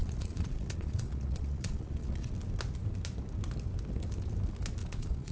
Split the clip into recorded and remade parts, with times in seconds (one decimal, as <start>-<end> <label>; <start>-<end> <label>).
0.0-2.3 remade; 2.3-4.8 recorded; 4.8-5.3 remade